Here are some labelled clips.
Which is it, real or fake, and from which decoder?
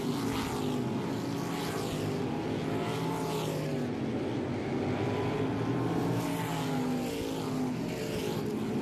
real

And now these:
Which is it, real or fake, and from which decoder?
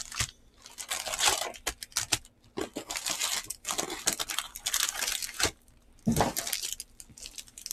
real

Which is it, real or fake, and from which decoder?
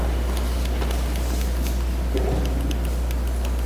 real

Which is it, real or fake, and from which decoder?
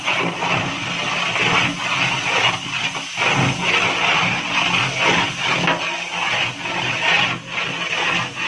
real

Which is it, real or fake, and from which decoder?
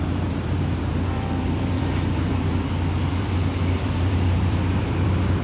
fake, vocoder, BigVGAN v2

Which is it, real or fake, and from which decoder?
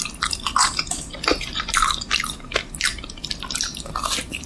fake, vocoder, BigVGAN v2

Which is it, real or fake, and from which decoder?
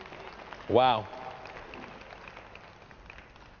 real